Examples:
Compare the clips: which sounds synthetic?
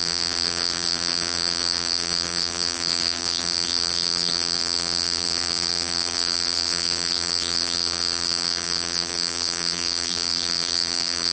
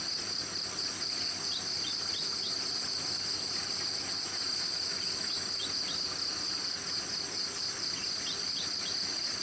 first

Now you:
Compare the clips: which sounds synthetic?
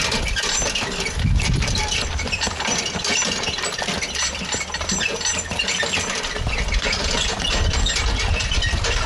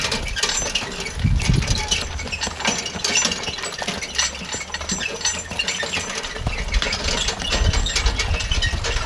first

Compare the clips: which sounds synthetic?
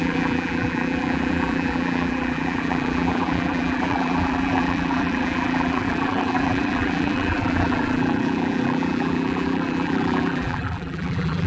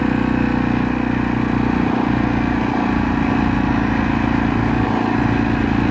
first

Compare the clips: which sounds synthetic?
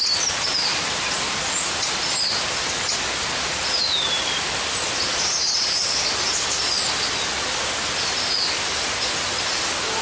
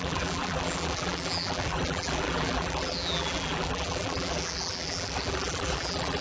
second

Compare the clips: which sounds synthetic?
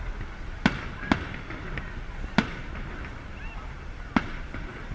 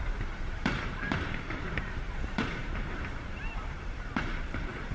second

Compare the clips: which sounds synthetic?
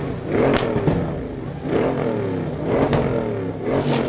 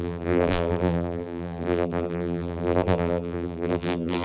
second